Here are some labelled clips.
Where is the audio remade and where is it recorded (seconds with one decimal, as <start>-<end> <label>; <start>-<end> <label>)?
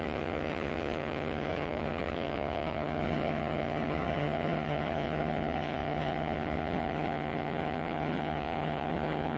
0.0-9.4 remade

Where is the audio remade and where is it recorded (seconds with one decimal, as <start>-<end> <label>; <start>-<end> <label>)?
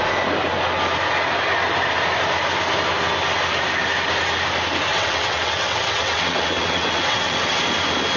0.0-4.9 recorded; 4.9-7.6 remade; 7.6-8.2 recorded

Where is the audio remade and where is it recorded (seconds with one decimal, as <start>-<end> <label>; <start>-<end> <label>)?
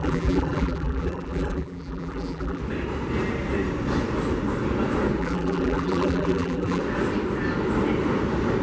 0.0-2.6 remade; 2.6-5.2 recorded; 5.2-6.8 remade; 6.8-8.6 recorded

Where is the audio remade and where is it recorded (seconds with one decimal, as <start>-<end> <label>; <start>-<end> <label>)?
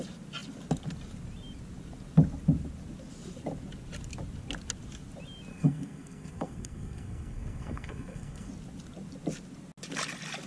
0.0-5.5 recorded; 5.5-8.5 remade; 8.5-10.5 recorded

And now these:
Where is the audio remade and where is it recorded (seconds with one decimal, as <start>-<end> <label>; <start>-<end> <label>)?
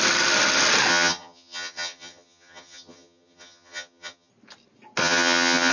0.0-0.9 recorded; 0.9-4.3 remade; 4.3-5.0 recorded; 5.0-5.7 remade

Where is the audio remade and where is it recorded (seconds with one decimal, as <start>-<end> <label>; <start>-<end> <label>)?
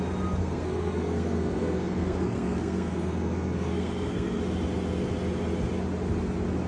0.0-0.4 recorded; 0.4-4.4 remade; 4.4-6.7 recorded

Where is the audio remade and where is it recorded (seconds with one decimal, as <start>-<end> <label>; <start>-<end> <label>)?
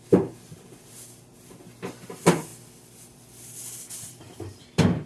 0.0-5.1 recorded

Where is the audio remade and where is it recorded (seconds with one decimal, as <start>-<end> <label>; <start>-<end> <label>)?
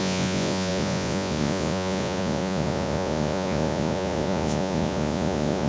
0.0-5.7 remade